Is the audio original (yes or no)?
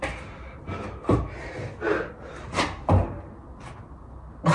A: yes